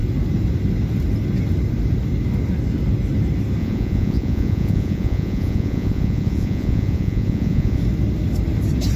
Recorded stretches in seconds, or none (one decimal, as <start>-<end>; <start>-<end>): 0.0-3.6; 7.8-9.0